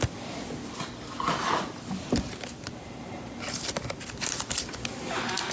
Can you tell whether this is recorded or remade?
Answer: recorded